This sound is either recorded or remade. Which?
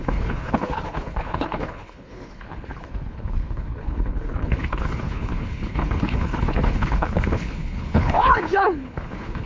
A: remade